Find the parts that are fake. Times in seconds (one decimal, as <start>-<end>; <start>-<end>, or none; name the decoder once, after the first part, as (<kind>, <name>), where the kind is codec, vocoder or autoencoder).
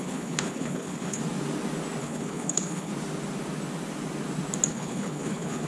0.0-1.2 (codec, HILCodec); 2.0-2.9; 4.7-5.7